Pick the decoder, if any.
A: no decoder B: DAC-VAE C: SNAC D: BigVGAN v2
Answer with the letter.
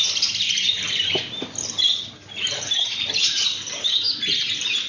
A